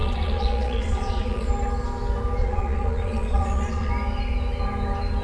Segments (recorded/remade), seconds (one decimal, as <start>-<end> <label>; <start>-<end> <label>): 0.0-1.5 remade; 1.5-2.4 recorded; 2.4-3.9 remade; 3.9-5.2 recorded

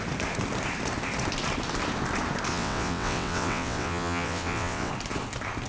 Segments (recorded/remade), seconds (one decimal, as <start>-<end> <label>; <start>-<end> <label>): 0.0-2.5 recorded; 2.5-4.9 remade; 4.9-5.7 recorded

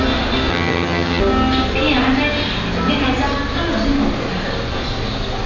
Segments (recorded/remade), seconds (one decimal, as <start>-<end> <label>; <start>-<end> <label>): 0.0-0.5 recorded; 0.5-1.2 remade; 1.2-5.5 recorded

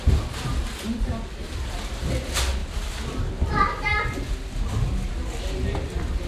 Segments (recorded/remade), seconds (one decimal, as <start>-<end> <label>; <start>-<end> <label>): 0.0-6.3 recorded

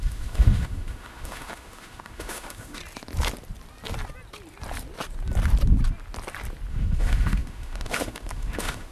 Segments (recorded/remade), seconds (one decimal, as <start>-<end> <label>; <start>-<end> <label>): 0.0-2.8 remade; 2.8-6.7 recorded; 6.7-8.9 remade

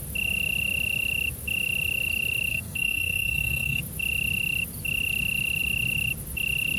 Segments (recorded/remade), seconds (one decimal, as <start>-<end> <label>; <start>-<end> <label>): 0.0-2.5 recorded; 2.5-3.8 remade; 3.8-6.8 recorded

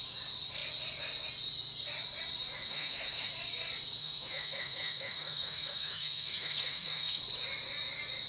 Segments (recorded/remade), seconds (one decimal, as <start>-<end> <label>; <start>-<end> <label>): 0.0-2.6 recorded; 2.6-3.3 remade; 3.3-4.0 recorded; 4.0-7.2 remade; 7.2-8.3 recorded

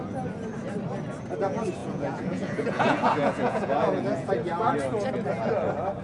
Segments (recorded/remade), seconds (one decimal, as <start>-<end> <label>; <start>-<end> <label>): 0.0-1.8 recorded; 1.8-4.3 remade; 4.3-6.0 recorded